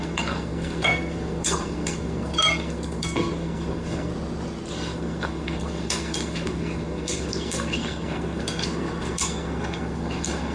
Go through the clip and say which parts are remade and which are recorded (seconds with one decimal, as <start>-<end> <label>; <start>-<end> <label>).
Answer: 0.0-4.1 remade; 4.1-4.7 recorded; 4.7-10.5 remade